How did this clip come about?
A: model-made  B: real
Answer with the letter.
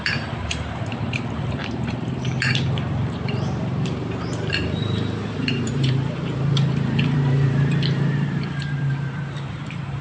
A